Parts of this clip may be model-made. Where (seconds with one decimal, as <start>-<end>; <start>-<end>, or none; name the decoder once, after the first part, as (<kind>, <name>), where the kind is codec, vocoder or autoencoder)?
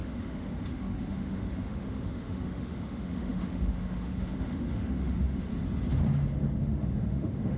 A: 0.0-5.5 (autoencoder, DAC-VAE); 6.6-7.6